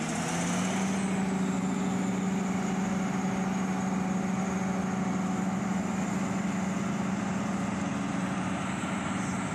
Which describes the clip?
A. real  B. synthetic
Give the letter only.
A